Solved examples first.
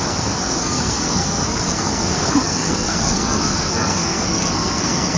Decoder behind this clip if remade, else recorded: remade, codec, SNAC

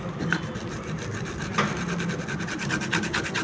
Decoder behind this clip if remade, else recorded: recorded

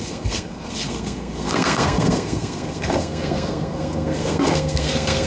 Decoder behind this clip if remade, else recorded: remade, codec, SNAC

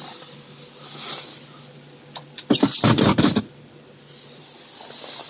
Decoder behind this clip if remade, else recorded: remade, vocoder, BigVGAN v2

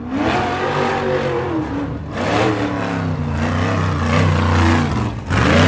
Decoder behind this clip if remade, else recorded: recorded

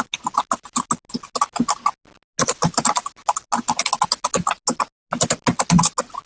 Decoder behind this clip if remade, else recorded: recorded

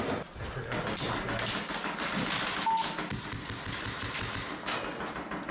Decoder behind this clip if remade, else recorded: recorded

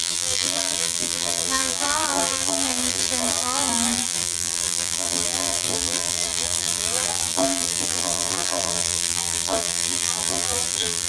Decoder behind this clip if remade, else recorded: remade, vocoder, BigVGAN v2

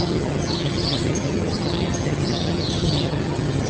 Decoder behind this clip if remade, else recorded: remade, vocoder, HiFi-GAN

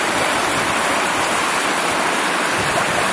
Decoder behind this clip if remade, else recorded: recorded